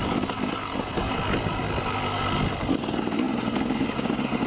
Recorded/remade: recorded